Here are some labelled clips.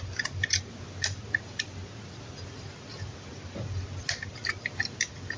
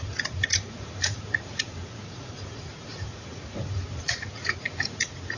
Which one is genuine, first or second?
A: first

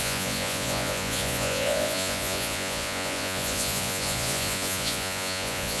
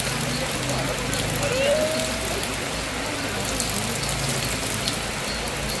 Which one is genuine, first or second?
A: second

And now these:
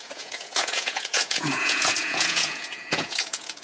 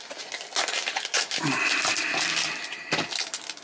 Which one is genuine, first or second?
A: second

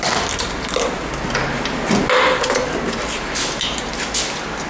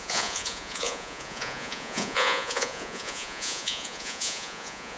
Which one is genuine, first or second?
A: first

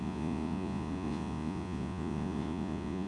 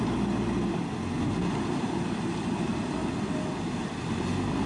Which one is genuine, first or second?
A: second